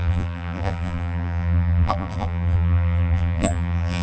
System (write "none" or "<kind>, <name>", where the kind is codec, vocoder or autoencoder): vocoder, BigVGAN v2